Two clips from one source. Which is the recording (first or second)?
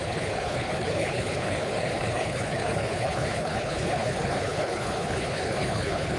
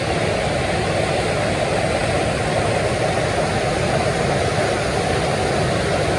second